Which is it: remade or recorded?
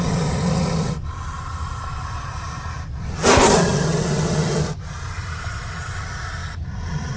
recorded